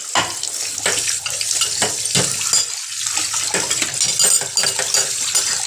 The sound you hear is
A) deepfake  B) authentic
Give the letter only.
B